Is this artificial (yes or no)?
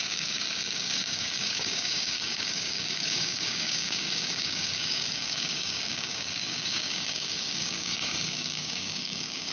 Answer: yes